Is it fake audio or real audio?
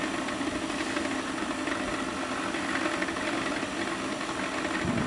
real